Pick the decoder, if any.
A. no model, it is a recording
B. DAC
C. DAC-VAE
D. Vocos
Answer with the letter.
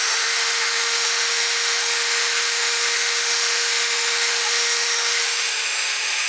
C